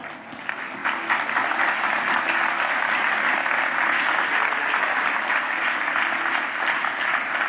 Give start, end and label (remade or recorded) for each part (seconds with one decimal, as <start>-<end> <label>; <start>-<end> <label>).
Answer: 0.0-7.5 recorded